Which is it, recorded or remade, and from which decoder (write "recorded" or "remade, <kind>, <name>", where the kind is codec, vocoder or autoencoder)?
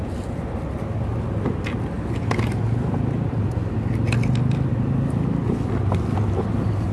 recorded